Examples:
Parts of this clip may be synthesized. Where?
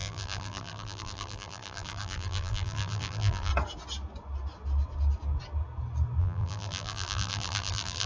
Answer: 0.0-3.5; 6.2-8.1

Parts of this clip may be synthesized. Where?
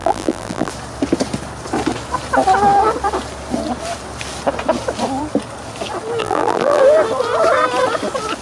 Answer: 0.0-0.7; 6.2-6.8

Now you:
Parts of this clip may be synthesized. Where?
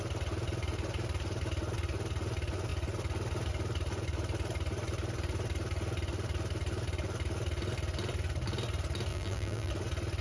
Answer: 9.1-9.7